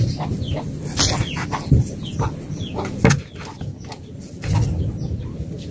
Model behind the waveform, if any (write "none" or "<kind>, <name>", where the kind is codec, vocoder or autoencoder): none